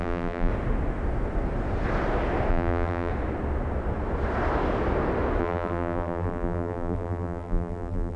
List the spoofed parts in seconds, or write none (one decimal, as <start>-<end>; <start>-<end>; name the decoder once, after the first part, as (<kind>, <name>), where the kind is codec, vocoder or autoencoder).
0.0-0.5 (vocoder, BigVGAN v2); 2.5-3.1; 5.4-8.2